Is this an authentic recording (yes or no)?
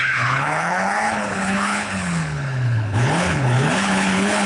no